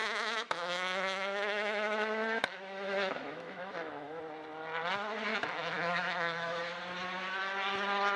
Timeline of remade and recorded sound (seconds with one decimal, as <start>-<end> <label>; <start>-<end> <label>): 0.0-4.2 remade; 4.2-5.3 recorded; 5.3-6.6 remade; 6.6-8.2 recorded